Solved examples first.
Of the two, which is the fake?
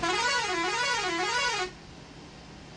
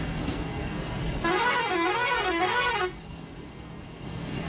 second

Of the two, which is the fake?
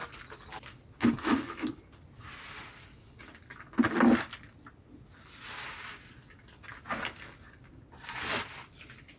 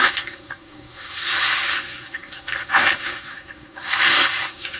second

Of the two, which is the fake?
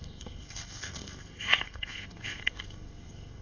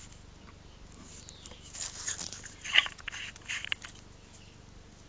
first